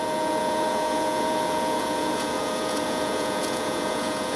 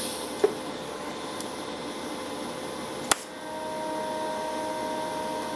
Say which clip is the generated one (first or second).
first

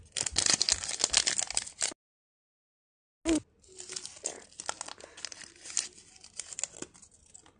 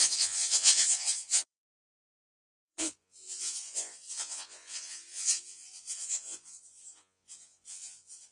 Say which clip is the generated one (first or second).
second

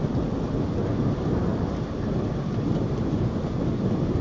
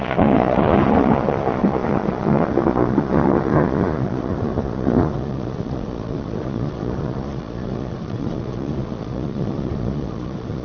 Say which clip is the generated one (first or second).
second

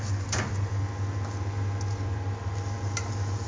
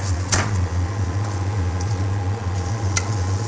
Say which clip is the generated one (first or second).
second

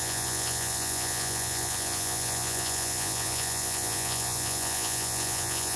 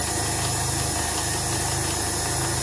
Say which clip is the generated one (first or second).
first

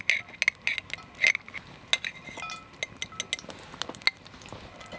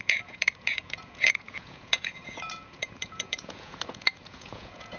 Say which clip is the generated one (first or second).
second